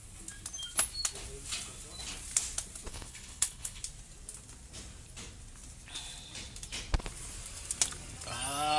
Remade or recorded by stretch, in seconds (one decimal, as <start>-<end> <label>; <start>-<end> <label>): 0.0-2.9 recorded; 2.9-3.8 remade; 3.8-8.8 recorded